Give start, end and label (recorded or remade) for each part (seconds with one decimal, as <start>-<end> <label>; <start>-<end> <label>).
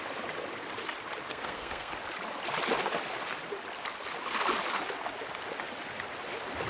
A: 0.0-1.3 recorded; 1.3-2.0 remade; 2.0-6.7 recorded